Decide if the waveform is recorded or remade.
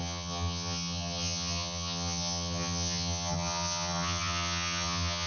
remade